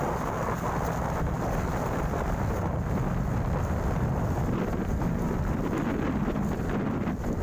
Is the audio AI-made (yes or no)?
no